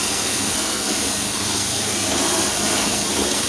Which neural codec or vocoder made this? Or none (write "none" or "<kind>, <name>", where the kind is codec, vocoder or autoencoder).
codec, SNAC